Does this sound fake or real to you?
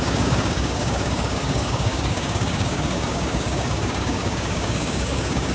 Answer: fake